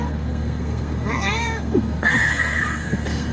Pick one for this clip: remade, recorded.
remade